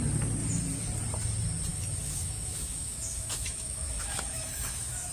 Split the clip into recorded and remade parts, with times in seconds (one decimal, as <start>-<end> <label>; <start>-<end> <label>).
0.0-1.7 recorded; 1.7-5.1 remade